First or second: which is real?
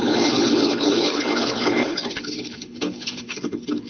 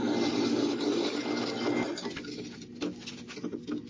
second